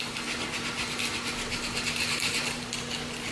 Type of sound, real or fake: real